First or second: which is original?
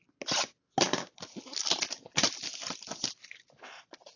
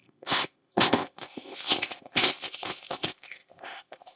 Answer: first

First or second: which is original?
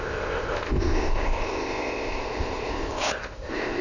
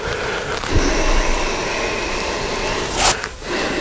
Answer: second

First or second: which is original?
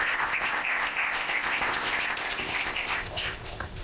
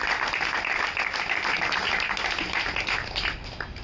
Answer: second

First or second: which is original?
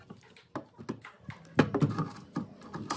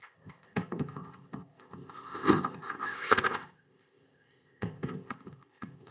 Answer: first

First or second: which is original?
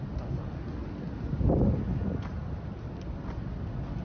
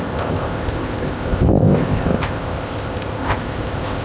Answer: first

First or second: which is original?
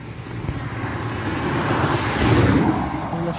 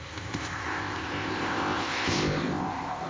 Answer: first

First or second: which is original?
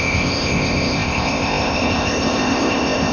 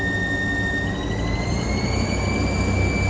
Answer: second